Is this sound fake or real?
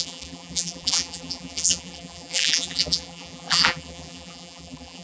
fake